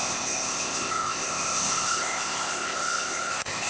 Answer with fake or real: fake